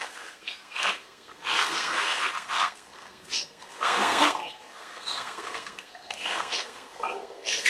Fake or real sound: fake